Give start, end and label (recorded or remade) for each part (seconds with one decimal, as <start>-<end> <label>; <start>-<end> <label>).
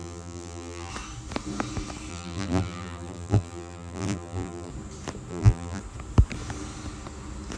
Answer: 0.0-0.9 remade; 0.9-2.1 recorded; 2.1-4.7 remade; 4.7-5.3 recorded; 5.3-5.8 remade; 5.8-7.6 recorded